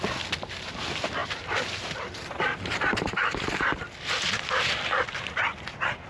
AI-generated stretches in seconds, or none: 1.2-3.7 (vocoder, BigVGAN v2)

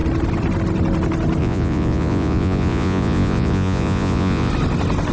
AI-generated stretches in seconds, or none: 1.4-4.5 (vocoder, Vocos)

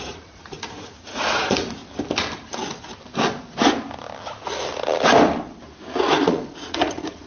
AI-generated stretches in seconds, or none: 0.0-1.8 (vocoder, Vocos); 6.1-7.3

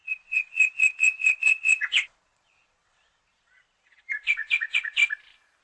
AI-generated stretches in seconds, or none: 0.0-5.0 (vocoder, Vocos)